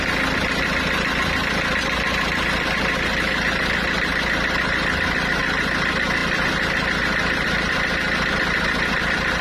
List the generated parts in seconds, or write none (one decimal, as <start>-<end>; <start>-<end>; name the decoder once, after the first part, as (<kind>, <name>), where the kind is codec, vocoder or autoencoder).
none